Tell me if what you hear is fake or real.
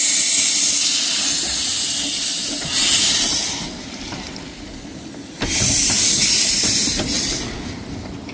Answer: real